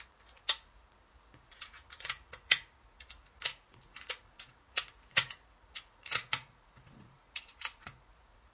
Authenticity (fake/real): fake